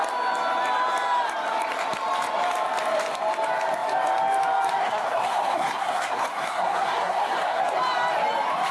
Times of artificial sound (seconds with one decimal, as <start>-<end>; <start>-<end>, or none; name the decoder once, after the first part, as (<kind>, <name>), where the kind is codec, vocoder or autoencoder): 4.8-7.6 (codec, SNAC)